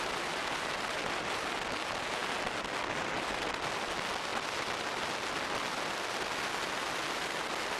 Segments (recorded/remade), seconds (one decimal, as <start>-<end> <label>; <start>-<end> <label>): 0.0-7.8 recorded

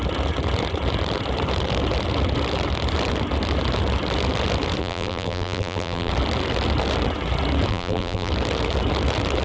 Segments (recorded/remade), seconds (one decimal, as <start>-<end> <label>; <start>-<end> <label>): 0.0-4.8 recorded; 4.8-6.1 remade; 6.1-7.7 recorded; 7.7-8.3 remade; 8.3-9.4 recorded

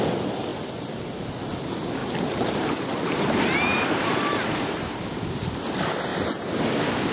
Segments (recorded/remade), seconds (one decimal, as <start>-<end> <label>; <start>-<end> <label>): 0.0-2.0 recorded; 2.0-5.5 remade; 5.5-6.1 recorded; 6.1-7.1 remade

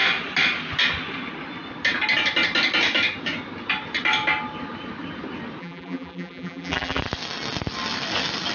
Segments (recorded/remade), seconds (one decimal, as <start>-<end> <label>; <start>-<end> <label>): 0.0-5.6 recorded; 5.6-7.0 remade; 7.0-8.5 recorded

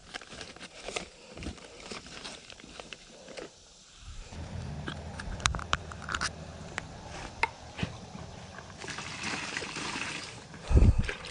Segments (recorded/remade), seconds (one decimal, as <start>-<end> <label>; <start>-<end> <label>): 0.0-0.7 recorded; 0.7-7.2 remade; 7.2-9.3 recorded; 9.3-11.3 remade

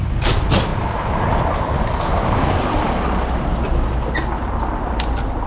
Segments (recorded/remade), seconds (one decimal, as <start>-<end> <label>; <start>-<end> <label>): 0.0-0.7 recorded; 0.7-1.4 remade; 1.4-5.5 recorded

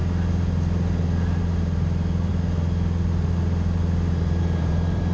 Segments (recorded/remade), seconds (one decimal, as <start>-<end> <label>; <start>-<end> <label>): 0.0-1.4 recorded; 1.4-2.3 remade; 2.3-3.8 recorded; 3.8-5.1 remade